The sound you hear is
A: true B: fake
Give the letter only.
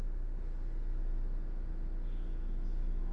A